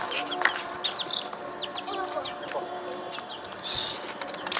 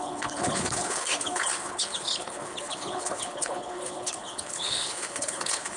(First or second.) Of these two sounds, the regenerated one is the second